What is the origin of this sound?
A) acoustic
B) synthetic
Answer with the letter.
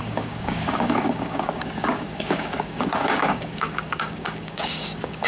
B